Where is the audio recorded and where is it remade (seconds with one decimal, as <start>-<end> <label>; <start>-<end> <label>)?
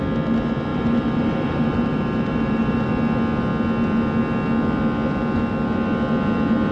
0.0-0.7 recorded; 0.7-2.9 remade; 2.9-6.7 recorded